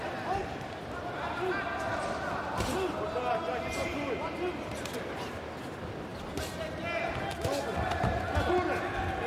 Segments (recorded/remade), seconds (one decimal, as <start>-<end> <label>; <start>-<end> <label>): 0.0-9.3 recorded